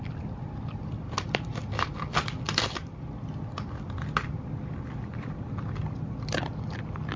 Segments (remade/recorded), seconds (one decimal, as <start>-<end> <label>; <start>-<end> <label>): 0.0-7.2 recorded